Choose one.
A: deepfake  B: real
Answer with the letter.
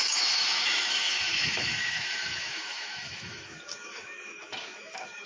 A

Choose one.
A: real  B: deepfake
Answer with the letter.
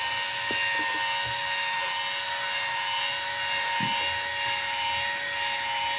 A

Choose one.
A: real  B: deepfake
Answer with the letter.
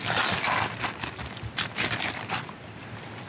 A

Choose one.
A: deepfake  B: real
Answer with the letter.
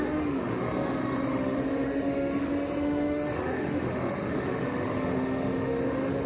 A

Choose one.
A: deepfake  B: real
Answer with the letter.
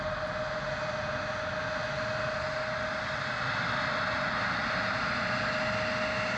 B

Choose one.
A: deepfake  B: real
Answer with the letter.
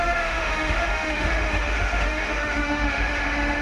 A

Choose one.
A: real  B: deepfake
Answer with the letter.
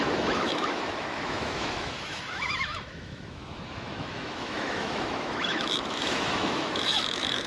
B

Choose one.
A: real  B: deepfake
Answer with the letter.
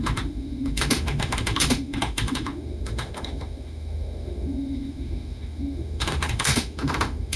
B